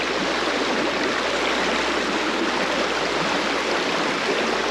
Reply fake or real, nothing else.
real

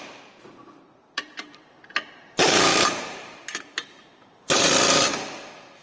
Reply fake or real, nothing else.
fake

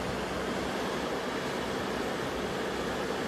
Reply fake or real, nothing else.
real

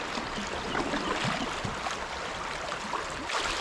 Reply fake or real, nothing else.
real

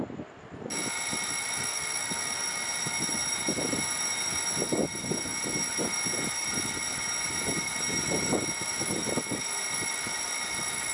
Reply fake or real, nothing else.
real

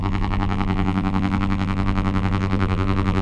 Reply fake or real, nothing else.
fake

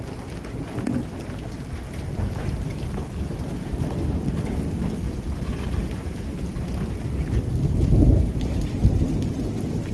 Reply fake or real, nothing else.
real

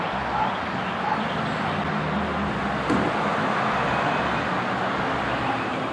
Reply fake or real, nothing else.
real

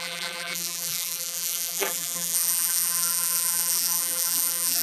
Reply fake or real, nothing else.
fake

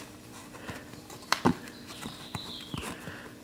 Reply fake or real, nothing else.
fake